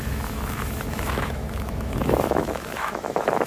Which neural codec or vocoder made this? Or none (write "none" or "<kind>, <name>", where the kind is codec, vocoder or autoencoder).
autoencoder, DAC-VAE